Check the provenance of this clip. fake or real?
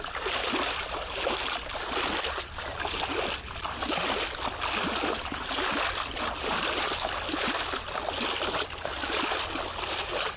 real